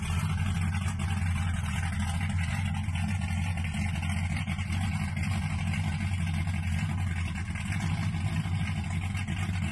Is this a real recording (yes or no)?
yes